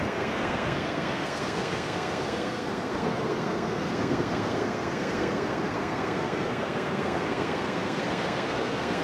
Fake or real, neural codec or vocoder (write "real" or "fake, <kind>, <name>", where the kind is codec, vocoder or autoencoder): fake, codec, SNAC